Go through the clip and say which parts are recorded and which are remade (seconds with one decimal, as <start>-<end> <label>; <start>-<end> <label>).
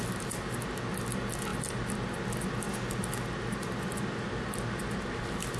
0.0-5.6 recorded